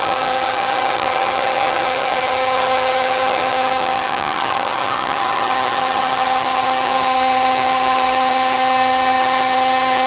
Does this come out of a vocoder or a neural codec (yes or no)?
yes